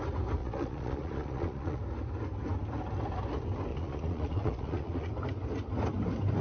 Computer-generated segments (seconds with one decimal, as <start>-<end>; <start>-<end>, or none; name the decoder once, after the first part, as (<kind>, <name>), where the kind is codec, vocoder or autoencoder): 0.4-1.8 (vocoder, Vocos); 3.7-5.1